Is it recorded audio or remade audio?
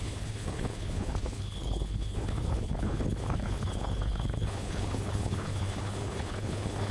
remade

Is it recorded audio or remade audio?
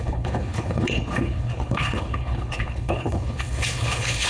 remade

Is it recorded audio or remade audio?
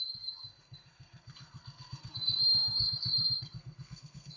remade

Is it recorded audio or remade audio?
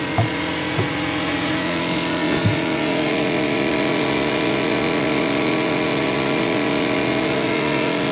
remade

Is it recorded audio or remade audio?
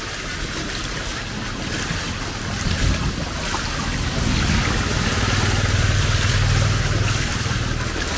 recorded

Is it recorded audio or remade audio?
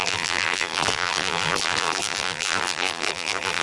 remade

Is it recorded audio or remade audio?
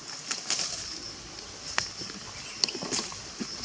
recorded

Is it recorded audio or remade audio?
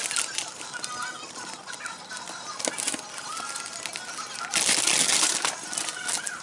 recorded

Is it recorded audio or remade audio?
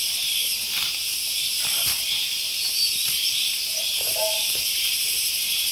remade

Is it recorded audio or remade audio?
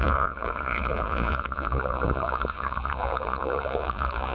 remade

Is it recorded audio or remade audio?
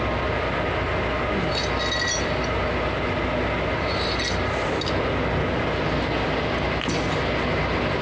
recorded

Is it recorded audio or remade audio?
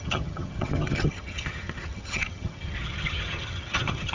remade